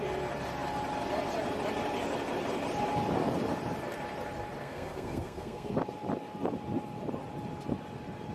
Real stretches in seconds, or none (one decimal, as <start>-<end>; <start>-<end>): 0.0-4.6; 5.7-8.3